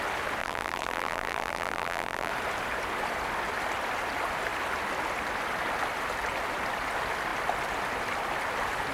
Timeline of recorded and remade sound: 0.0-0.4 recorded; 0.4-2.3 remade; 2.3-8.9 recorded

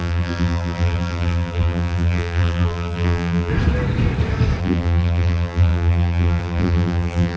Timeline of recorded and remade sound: 0.0-3.5 remade; 3.5-4.6 recorded; 4.6-7.4 remade

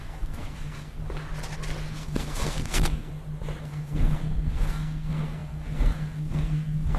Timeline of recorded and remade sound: 0.0-1.0 remade; 1.0-1.9 recorded; 1.9-3.1 remade; 3.1-3.6 recorded; 3.6-7.0 remade

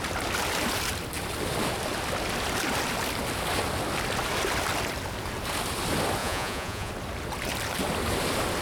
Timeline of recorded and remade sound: 0.0-6.2 recorded; 6.2-6.9 remade; 6.9-8.6 recorded

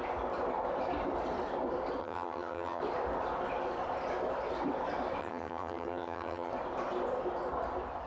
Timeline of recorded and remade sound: 0.0-2.0 recorded; 2.0-2.8 remade; 2.8-5.2 recorded; 5.2-6.5 remade; 6.5-8.1 recorded

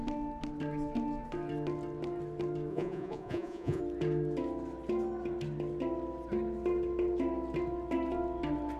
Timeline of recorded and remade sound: 0.0-2.7 recorded; 2.7-3.8 remade; 3.8-8.8 recorded